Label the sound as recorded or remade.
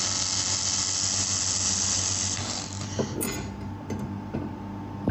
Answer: recorded